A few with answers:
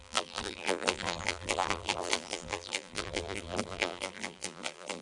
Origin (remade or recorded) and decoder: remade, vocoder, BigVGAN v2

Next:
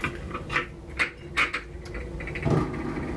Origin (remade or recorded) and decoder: recorded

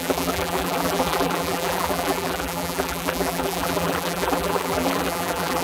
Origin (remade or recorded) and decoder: remade, vocoder, BigVGAN v2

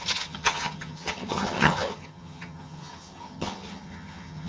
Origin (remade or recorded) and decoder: remade, vocoder, HiFi-GAN